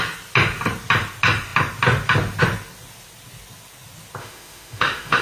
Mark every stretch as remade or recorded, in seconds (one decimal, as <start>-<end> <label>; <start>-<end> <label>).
0.0-4.2 recorded; 4.2-5.2 remade